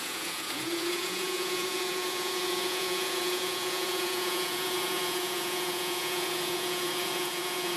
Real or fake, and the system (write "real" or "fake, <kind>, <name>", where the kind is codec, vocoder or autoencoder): fake, vocoder, Vocos